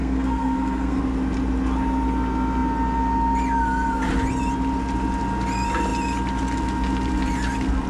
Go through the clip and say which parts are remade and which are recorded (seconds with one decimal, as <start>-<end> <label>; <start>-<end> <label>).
0.0-1.0 remade; 1.0-7.9 recorded